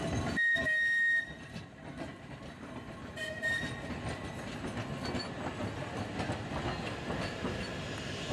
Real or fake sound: real